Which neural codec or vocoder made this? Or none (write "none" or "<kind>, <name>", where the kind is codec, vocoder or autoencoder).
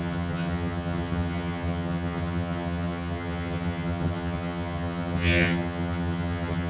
vocoder, HiFi-GAN